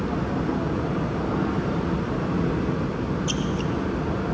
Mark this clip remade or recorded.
recorded